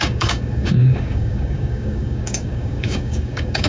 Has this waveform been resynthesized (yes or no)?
yes